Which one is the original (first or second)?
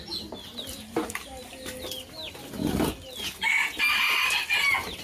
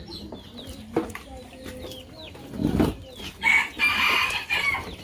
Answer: first